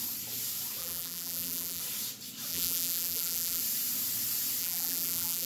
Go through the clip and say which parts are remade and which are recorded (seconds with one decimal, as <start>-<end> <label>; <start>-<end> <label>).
0.0-0.8 recorded; 0.8-1.8 remade; 1.8-2.5 recorded; 2.5-3.6 remade; 3.6-4.6 recorded; 4.6-5.5 remade